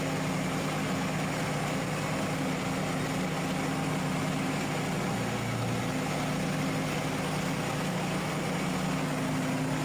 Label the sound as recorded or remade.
recorded